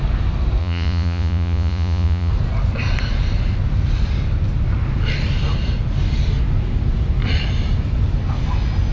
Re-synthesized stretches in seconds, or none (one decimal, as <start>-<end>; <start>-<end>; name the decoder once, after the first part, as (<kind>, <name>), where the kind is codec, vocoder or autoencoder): 0.6-2.3 (vocoder, Vocos)